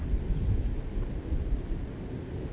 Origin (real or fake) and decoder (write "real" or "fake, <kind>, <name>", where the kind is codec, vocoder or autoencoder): real